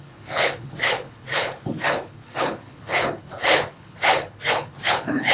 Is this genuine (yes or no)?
no